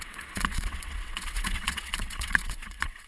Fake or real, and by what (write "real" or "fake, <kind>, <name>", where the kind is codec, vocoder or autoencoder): fake, vocoder, WaveNeXt